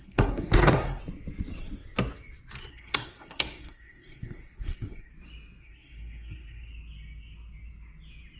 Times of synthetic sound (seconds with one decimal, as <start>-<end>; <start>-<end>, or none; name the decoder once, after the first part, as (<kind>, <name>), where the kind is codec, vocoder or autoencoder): 0.0-1.0 (codec, SNAC); 2.7-5.1; 5.6-6.7